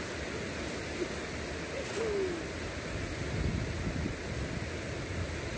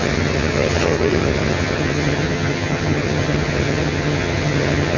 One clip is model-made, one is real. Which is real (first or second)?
first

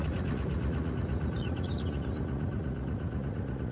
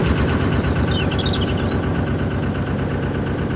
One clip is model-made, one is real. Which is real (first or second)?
second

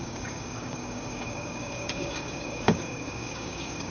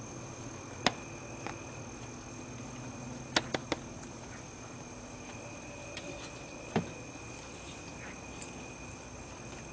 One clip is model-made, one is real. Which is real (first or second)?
second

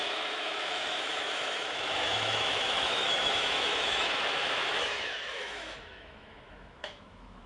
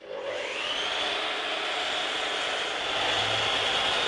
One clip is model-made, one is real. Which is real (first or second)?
second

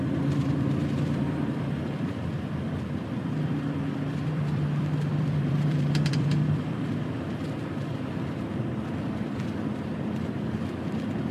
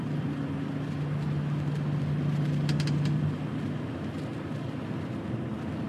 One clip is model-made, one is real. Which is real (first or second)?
second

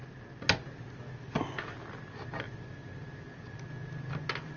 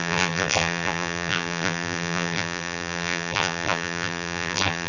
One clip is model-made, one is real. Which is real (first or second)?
first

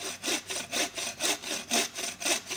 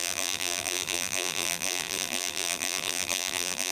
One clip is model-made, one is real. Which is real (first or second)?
first